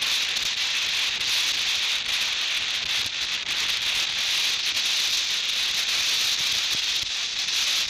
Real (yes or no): yes